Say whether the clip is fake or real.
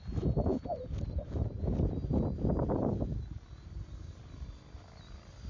real